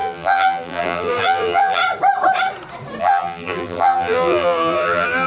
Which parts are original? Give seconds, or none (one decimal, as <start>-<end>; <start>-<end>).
1.8-3.0